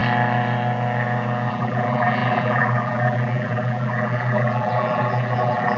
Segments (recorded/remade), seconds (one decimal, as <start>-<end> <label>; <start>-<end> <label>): 0.0-1.5 recorded; 1.5-5.8 remade